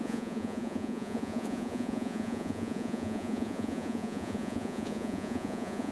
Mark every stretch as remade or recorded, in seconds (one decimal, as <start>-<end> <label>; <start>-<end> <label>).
0.0-5.9 remade

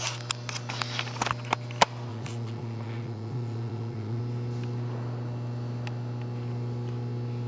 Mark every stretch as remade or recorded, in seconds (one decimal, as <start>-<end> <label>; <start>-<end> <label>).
0.0-2.1 recorded; 2.1-4.2 remade; 4.2-7.5 recorded

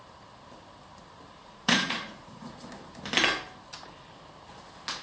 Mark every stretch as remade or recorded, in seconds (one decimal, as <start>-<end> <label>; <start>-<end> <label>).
0.0-1.4 recorded; 1.4-2.7 remade; 2.7-5.0 recorded

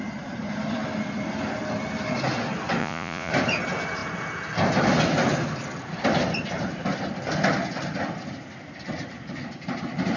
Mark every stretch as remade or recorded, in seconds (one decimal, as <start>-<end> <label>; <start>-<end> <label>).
0.0-2.8 recorded; 2.8-3.3 remade; 3.3-10.2 recorded

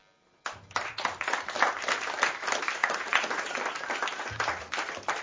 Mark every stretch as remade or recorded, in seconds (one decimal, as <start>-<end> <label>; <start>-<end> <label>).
0.0-2.8 recorded; 2.8-3.6 remade; 3.6-5.2 recorded

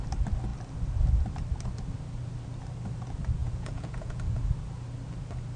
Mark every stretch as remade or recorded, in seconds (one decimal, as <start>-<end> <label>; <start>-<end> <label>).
0.0-3.4 recorded; 3.4-4.5 remade; 4.5-5.6 recorded